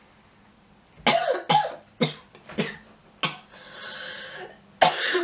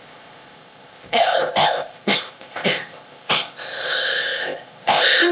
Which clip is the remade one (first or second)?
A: second